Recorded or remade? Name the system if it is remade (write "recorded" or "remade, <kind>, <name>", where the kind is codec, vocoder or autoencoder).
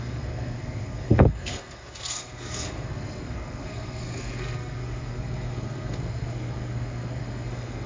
remade, codec, SNAC